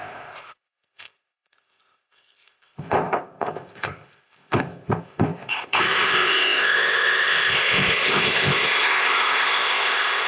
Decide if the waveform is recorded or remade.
remade